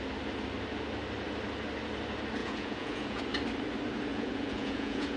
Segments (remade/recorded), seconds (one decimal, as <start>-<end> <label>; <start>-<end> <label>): 0.0-2.4 recorded; 2.4-3.2 remade; 3.2-4.1 recorded; 4.1-5.2 remade